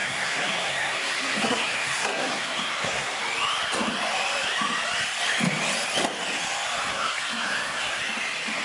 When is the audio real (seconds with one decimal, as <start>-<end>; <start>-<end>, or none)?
3.2-6.9; 8.0-8.6